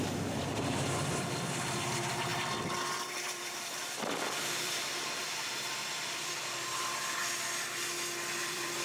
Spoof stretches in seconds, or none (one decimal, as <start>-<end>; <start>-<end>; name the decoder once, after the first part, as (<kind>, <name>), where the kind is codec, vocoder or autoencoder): 0.0-7.2 (vocoder, BigVGAN v2); 8.4-8.8